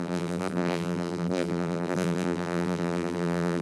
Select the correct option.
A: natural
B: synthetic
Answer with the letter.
B